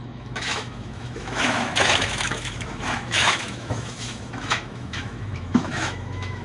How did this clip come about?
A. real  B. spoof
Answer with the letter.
B